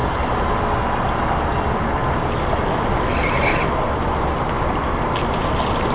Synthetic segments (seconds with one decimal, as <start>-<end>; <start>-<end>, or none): none